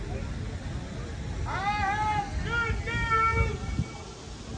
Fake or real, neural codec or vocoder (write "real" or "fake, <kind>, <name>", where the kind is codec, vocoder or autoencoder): real